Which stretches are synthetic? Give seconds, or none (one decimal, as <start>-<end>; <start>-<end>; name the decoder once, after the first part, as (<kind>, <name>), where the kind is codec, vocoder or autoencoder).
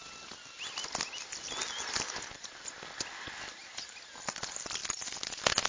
none